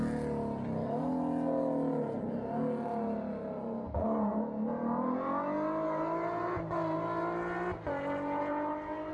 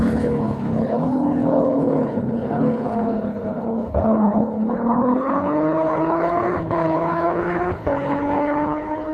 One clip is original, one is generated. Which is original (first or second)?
first